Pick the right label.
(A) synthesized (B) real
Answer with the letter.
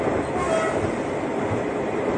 B